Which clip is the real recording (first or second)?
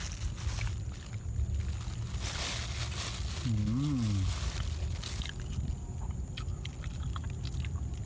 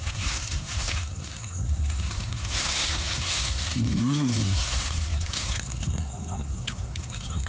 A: first